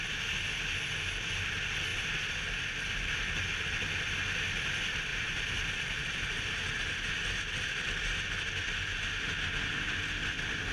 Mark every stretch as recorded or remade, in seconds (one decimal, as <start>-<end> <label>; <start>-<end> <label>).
0.0-5.1 recorded; 5.1-7.4 remade; 7.4-10.7 recorded